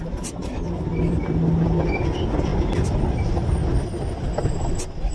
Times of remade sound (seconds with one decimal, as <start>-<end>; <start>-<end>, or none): 0.4-0.9

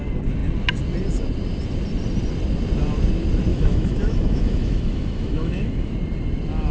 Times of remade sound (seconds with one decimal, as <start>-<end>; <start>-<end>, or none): 3.5-5.9